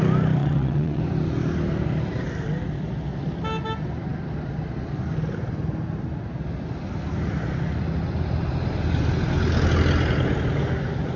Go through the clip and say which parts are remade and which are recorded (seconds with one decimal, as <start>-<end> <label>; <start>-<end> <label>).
0.0-0.4 recorded; 0.4-1.0 remade; 1.0-11.2 recorded